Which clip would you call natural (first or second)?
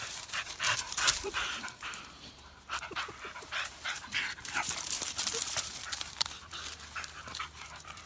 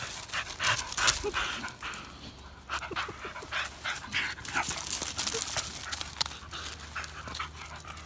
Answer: second